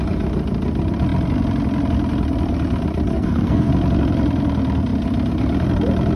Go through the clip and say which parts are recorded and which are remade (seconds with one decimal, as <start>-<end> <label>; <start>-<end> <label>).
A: 0.0-3.1 recorded; 3.1-3.7 remade; 3.7-6.2 recorded